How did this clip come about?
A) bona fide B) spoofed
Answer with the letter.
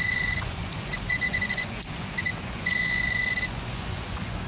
B